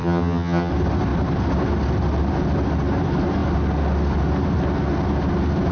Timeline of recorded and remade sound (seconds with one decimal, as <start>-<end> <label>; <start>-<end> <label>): 0.0-0.7 remade; 0.7-5.7 recorded